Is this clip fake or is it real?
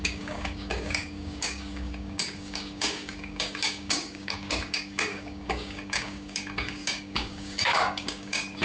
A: fake